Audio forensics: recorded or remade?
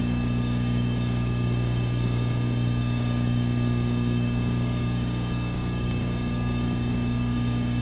remade